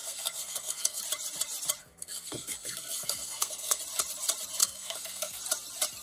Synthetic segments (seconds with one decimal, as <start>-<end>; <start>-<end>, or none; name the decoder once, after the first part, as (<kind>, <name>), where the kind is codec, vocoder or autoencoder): 0.0-1.0 (codec, SNAC); 1.8-3.8; 4.6-5.4